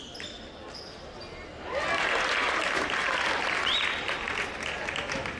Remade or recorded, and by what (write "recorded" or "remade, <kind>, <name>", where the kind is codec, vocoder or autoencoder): recorded